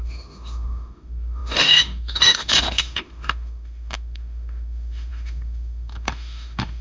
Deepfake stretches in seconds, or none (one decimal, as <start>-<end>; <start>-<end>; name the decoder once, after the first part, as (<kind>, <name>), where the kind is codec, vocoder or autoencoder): 0.0-6.8 (autoencoder, DAC-VAE)